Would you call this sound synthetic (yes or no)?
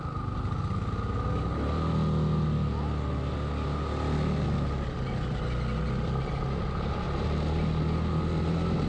no